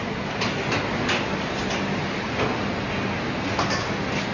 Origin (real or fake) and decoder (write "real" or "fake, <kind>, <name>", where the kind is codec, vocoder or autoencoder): real